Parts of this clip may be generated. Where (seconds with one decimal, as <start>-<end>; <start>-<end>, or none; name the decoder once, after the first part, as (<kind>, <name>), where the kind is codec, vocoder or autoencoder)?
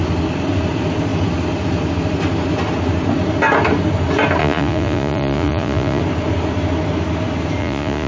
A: 4.4-6.0 (vocoder, Vocos); 7.6-8.1